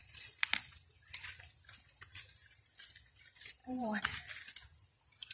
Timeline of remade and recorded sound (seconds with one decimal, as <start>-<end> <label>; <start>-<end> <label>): 0.0-3.6 recorded; 3.6-4.3 remade; 4.3-5.3 recorded